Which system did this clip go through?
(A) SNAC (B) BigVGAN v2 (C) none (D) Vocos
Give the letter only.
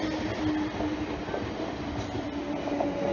C